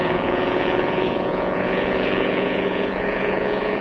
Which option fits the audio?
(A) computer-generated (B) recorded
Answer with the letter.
A